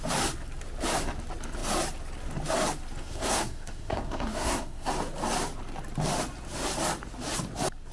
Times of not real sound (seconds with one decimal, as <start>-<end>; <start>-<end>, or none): 3.0-4.9